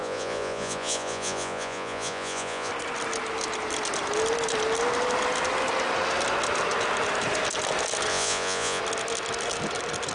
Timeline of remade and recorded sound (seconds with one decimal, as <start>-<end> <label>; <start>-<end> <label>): 0.0-2.7 remade; 2.7-8.1 recorded; 8.1-8.8 remade; 8.8-10.1 recorded